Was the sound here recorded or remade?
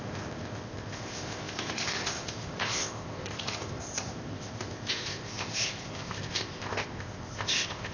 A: remade